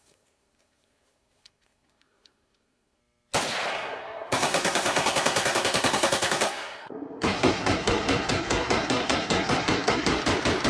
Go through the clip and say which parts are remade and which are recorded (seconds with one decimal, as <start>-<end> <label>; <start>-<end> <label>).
0.0-3.0 remade; 3.0-3.7 recorded; 3.7-10.2 remade; 10.2-10.7 recorded